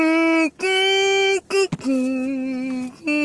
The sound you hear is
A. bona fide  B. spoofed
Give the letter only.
A